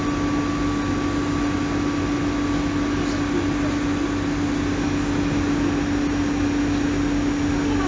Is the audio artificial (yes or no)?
no